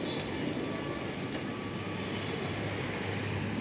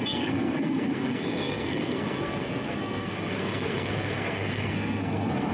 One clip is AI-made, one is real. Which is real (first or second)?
first